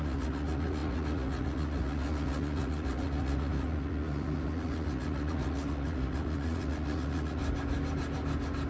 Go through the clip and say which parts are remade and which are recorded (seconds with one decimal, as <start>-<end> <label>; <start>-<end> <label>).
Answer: 0.0-7.4 remade; 7.4-8.7 recorded